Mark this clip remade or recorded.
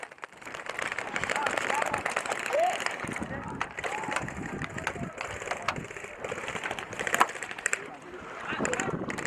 remade